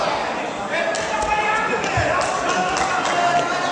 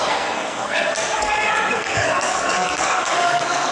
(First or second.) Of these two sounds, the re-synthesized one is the second